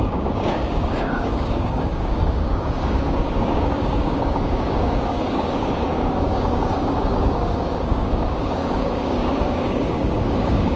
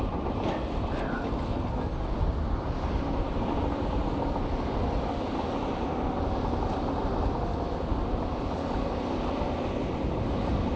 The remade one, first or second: first